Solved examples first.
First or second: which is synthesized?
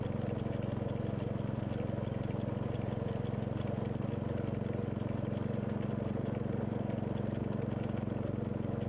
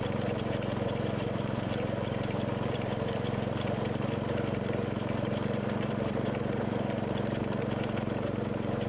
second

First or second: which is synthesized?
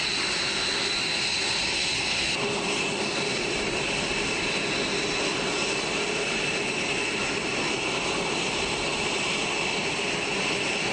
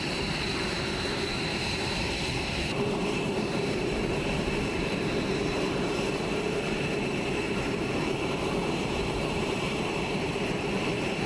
second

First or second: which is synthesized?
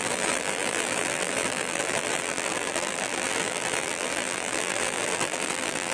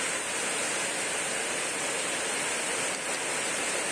first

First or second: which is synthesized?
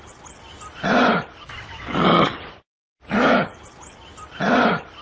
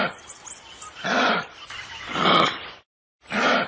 second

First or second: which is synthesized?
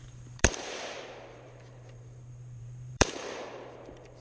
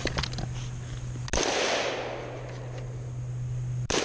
first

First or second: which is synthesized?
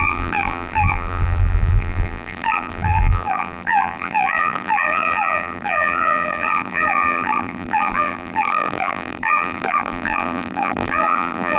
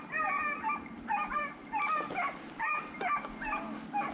first